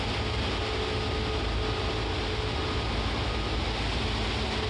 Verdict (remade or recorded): recorded